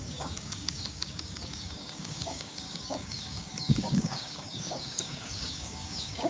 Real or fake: fake